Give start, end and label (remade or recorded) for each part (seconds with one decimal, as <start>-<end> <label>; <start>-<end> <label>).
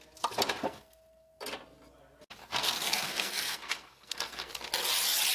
0.0-0.6 recorded; 0.6-1.4 remade; 1.4-2.4 recorded; 2.4-4.5 remade; 4.5-5.3 recorded